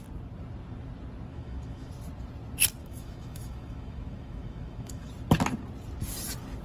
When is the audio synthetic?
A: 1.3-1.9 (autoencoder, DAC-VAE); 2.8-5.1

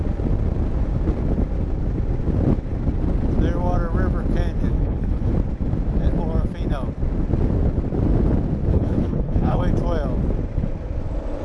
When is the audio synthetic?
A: 4.7-5.3 (codec, HILCodec); 8.7-9.6

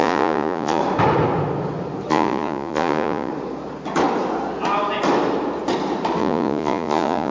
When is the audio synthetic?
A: 0.0-0.8 (vocoder, Vocos); 2.1-3.3; 6.2-7.3

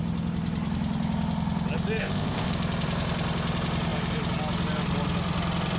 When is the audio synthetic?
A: 2.0-2.5 (codec, ZipCodec)